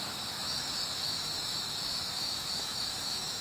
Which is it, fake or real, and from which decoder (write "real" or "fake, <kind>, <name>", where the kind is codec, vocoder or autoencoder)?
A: fake, autoencoder, DAC-VAE